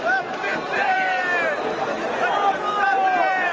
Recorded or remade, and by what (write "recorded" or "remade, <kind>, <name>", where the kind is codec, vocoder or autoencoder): remade, vocoder, BigVGAN v2